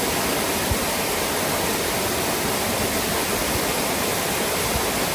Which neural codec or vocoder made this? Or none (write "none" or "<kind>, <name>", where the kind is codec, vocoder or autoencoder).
none